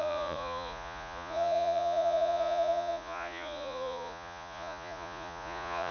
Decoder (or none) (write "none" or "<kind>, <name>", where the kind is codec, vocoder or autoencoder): vocoder, Vocos